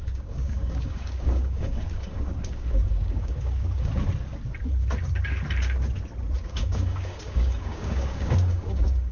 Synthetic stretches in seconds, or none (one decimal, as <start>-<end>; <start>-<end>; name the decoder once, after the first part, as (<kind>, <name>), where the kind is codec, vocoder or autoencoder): 0.0-3.9 (codec, DAC); 6.4-9.1